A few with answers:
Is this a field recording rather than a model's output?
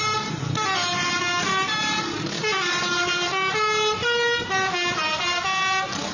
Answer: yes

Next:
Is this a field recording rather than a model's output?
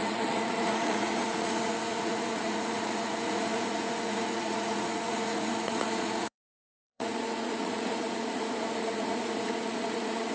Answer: no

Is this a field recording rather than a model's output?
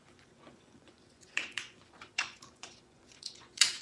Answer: no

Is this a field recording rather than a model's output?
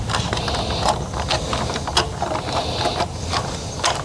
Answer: yes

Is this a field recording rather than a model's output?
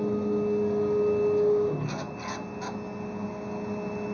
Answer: yes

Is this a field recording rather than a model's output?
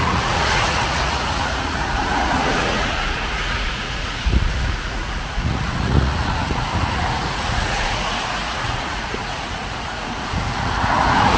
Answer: no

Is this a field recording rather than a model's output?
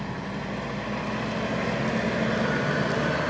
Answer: yes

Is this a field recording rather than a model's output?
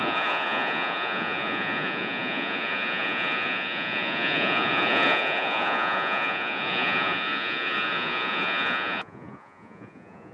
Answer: no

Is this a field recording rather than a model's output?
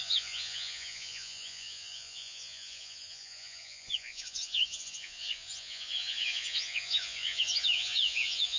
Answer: no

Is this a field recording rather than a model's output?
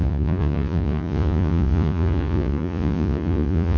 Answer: no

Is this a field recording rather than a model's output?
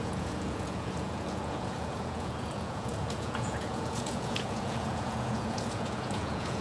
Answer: no